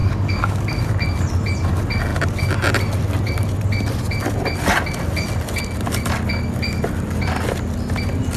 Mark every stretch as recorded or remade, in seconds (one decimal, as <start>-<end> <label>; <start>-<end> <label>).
0.0-0.8 remade; 0.8-8.4 recorded